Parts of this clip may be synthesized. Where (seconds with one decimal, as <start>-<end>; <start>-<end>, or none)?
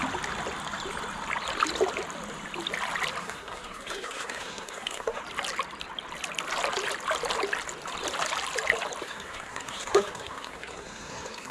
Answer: 3.2-5.2; 9.0-11.5